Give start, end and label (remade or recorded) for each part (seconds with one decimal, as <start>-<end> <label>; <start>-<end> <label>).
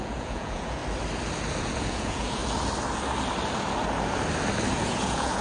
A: 0.0-0.8 remade; 0.8-1.6 recorded; 1.6-2.4 remade; 2.4-4.7 recorded; 4.7-5.4 remade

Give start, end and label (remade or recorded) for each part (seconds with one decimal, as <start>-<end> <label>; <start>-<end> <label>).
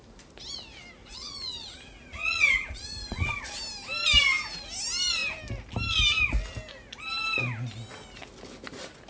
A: 0.0-1.0 recorded; 1.0-3.4 remade; 3.4-9.1 recorded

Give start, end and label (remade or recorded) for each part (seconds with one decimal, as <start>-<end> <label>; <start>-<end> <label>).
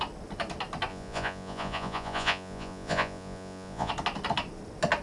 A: 0.0-0.9 recorded; 0.9-3.9 remade; 3.9-5.0 recorded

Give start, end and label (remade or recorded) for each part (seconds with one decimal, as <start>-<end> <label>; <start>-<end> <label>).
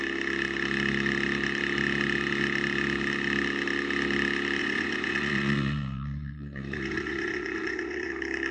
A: 0.0-4.6 recorded; 4.6-8.1 remade; 8.1-8.5 recorded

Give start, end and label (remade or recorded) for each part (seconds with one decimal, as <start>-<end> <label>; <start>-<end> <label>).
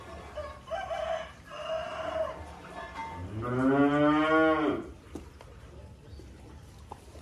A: 0.0-7.2 recorded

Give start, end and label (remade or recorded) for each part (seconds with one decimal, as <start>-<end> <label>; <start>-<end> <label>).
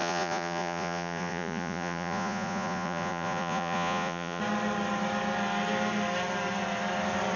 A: 0.0-4.4 remade; 4.4-7.4 recorded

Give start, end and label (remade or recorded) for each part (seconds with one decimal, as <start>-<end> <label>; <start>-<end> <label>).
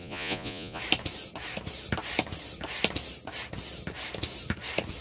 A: 0.0-0.8 remade; 0.8-5.0 recorded